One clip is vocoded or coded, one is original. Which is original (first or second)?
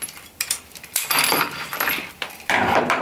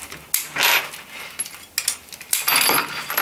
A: second